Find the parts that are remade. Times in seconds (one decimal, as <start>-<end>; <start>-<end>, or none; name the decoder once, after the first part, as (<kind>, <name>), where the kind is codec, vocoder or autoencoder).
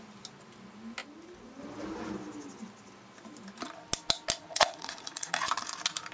4.4-5.5 (vocoder, Vocos)